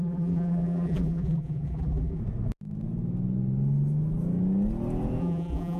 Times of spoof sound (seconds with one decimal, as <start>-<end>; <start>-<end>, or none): 0.0-2.2; 5.2-5.8